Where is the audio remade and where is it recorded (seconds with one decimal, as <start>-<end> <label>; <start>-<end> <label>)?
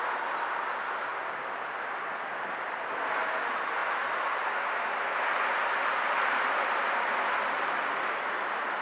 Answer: 0.0-8.8 recorded